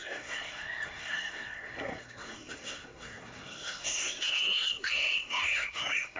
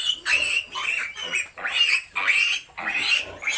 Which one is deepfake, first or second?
first